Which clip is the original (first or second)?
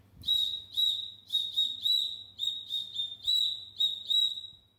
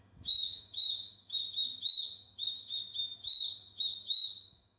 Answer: first